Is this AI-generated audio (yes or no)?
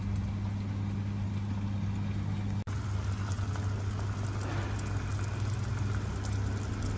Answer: no